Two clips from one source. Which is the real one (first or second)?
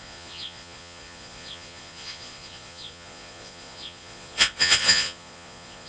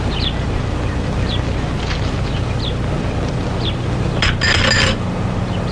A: second